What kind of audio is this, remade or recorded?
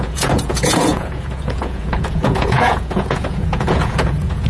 remade